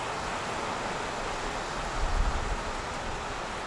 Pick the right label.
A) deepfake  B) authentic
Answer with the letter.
B